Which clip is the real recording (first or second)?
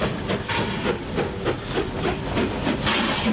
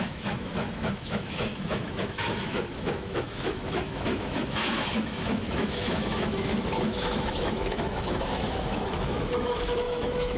first